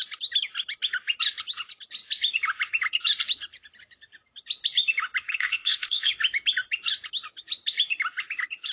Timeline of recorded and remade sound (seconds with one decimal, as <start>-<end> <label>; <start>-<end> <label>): 0.0-5.3 recorded; 5.3-6.1 remade; 6.1-8.7 recorded